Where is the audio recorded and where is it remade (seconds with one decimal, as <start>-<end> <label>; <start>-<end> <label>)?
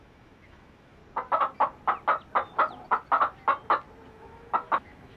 0.0-1.0 remade; 1.0-4.1 recorded; 4.1-5.2 remade